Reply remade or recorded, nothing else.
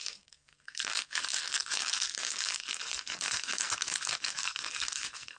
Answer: remade